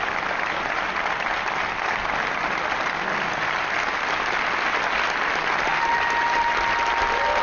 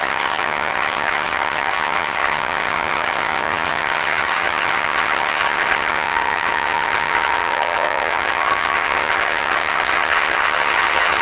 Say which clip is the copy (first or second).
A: second